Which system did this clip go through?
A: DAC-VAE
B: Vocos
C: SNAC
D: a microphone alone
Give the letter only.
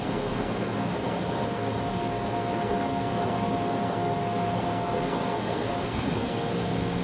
C